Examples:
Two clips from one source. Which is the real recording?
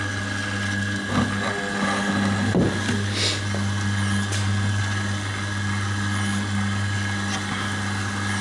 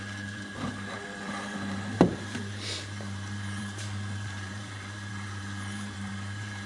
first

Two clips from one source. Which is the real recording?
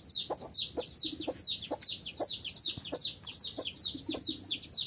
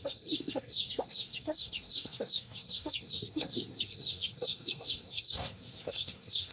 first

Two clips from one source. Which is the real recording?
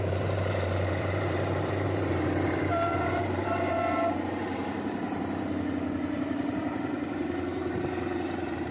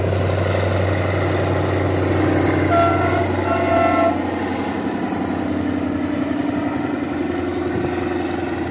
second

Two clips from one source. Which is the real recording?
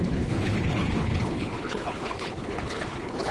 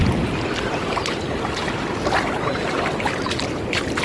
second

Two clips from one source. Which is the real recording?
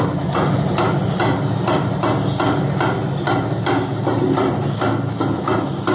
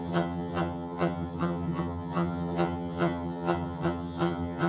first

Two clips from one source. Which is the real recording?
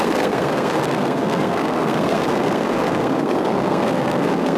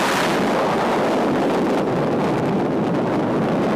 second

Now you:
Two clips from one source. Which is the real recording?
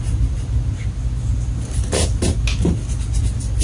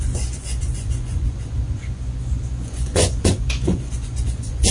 first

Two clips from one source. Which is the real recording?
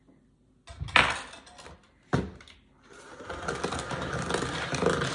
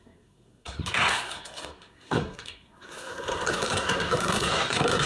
first